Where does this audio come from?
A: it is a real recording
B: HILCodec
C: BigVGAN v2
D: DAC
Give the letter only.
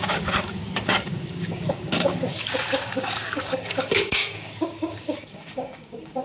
D